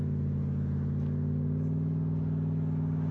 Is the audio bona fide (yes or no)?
yes